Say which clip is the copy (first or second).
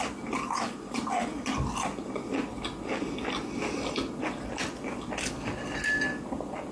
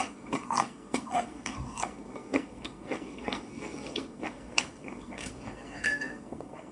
second